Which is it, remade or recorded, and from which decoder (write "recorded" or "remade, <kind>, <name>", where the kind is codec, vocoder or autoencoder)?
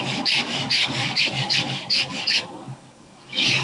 remade, codec, DAC